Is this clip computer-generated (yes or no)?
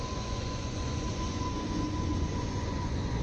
yes